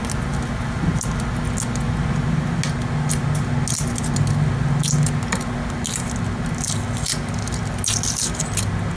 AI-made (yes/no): no